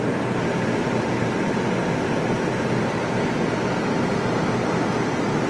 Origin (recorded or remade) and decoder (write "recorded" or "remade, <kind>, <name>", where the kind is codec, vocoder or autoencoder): recorded